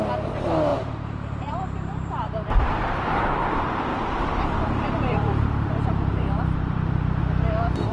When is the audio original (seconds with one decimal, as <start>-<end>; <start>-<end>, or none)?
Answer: 0.0-0.7; 3.1-3.9; 7.2-7.9